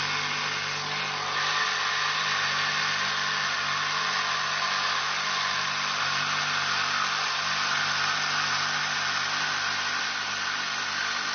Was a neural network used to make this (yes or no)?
no